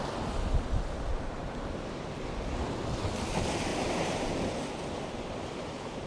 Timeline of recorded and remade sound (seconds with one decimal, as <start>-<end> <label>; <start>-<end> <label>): 0.0-1.1 recorded; 1.1-1.7 remade; 1.7-3.7 recorded; 3.7-4.4 remade; 4.4-6.1 recorded